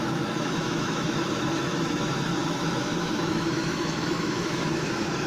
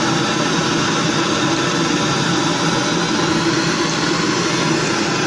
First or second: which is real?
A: second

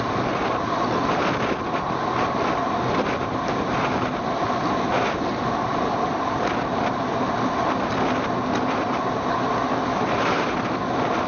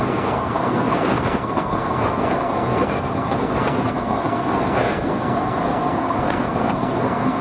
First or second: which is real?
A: first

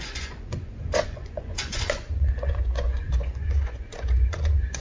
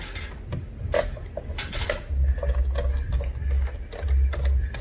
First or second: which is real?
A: second